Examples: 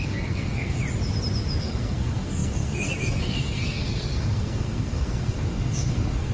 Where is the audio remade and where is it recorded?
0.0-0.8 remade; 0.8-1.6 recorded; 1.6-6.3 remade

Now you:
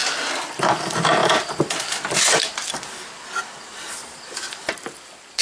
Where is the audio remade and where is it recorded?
0.0-5.4 recorded

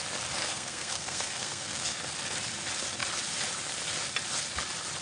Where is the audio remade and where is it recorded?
0.0-0.4 recorded; 0.4-2.0 remade; 2.0-5.0 recorded